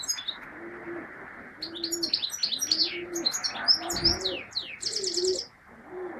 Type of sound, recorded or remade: recorded